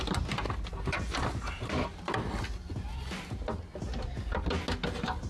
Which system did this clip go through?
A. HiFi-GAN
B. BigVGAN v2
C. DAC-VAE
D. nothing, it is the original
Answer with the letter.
D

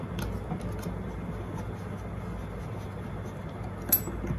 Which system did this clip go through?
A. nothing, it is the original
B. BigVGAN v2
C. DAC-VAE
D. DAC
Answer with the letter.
A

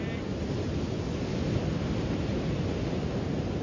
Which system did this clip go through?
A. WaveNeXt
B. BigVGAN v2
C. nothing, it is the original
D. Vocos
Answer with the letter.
C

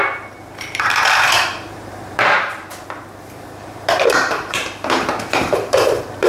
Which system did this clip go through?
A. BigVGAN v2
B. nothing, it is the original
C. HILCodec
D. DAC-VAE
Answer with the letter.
A